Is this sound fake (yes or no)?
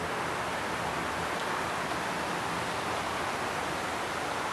no